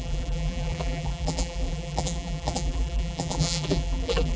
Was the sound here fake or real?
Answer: fake